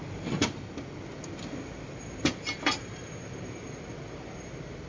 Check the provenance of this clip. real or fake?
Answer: real